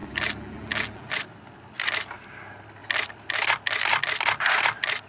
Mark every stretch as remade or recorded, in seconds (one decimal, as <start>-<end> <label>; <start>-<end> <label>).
0.0-1.1 remade; 1.1-5.1 recorded